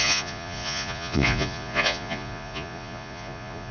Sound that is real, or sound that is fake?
fake